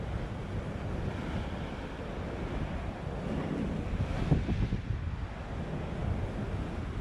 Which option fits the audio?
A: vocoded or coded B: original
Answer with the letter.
B